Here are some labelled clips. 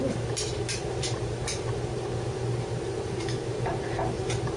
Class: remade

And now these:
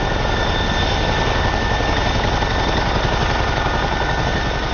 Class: recorded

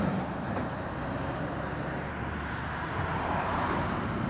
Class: remade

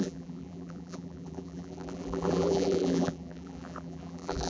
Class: remade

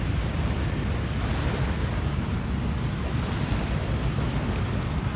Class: recorded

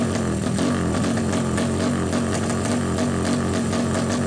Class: recorded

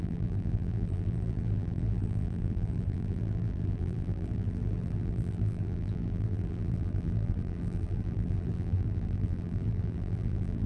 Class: remade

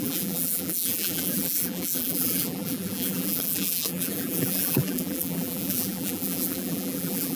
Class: remade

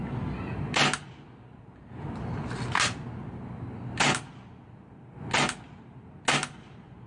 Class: recorded